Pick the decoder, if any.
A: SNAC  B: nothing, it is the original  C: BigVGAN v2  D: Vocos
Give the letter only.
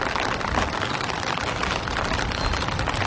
B